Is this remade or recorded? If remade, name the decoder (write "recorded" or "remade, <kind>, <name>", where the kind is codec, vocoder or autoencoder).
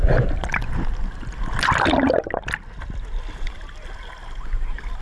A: recorded